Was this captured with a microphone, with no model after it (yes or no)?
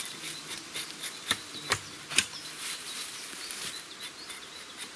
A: no